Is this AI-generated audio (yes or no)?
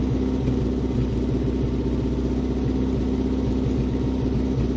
no